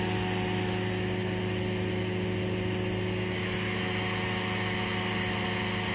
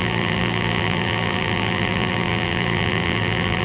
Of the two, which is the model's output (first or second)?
second